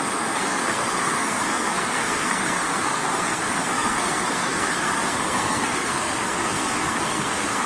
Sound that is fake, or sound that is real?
fake